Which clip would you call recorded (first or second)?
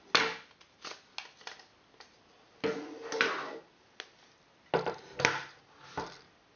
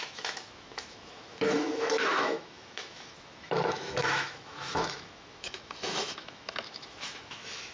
first